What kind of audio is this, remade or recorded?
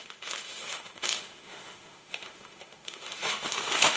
remade